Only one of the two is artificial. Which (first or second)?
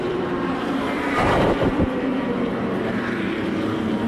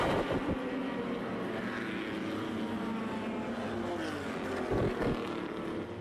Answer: first